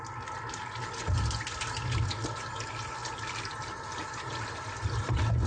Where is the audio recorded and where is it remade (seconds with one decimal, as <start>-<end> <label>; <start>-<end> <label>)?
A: 0.0-5.5 recorded